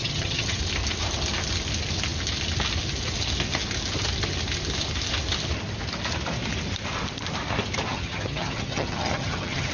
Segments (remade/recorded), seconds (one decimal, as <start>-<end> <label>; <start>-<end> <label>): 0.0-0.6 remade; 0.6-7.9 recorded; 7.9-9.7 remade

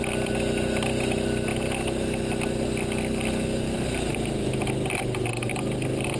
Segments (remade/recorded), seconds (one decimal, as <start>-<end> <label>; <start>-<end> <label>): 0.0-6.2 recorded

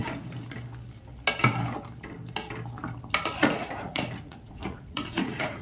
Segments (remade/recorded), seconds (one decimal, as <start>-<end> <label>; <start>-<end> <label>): 0.0-3.4 recorded; 3.4-5.6 remade